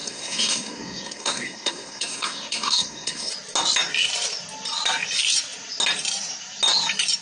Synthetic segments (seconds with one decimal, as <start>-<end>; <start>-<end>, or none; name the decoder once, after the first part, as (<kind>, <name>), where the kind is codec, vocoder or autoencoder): 0.0-3.3 (codec, SNAC)